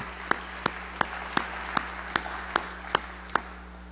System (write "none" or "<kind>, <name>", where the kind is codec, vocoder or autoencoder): none